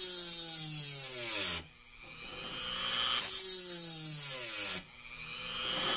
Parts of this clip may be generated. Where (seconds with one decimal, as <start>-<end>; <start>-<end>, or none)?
none